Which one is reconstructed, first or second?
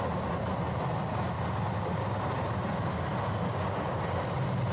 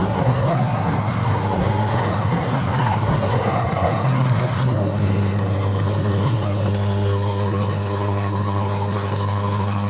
second